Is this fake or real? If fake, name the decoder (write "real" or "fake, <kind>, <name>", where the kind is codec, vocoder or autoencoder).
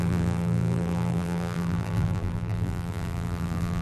fake, vocoder, BigVGAN v2